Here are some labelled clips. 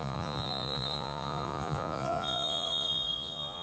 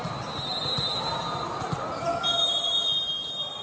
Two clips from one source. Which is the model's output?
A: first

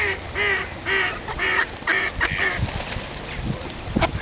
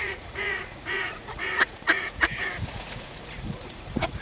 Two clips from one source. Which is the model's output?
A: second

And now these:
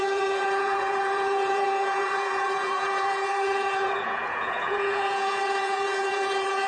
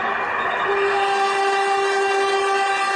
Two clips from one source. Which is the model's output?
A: first